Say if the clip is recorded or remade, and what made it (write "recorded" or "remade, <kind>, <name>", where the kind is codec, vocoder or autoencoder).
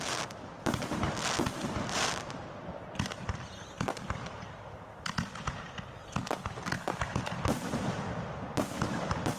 recorded